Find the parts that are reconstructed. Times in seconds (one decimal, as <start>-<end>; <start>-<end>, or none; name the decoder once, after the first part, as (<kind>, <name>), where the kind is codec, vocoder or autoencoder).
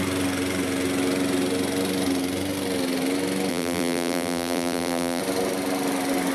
3.5-5.2 (vocoder, BigVGAN v2)